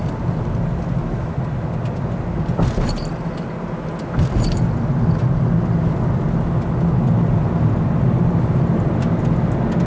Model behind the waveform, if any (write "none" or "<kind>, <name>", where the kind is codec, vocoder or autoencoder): none